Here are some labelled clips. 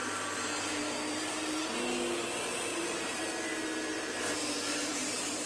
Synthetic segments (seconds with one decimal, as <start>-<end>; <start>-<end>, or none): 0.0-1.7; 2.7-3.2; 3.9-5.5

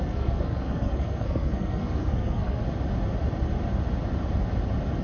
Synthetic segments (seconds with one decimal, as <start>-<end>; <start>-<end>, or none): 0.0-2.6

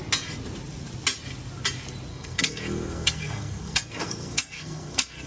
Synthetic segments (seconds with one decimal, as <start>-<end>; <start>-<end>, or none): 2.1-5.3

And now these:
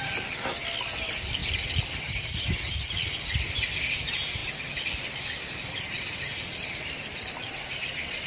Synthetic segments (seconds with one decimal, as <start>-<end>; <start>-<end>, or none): none